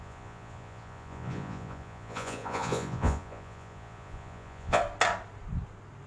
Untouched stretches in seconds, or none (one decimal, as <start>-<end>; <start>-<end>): 4.8-6.1